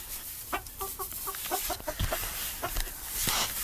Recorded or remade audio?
recorded